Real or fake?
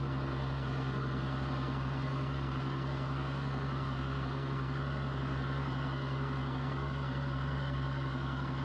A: fake